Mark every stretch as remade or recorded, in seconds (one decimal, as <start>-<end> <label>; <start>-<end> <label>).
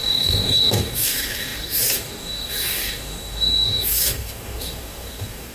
0.0-5.5 remade